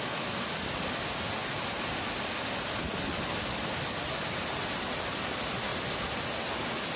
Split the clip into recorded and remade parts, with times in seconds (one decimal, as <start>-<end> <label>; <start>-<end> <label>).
0.0-7.0 recorded